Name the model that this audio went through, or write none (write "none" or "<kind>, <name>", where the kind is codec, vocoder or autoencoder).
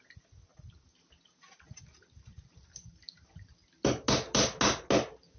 none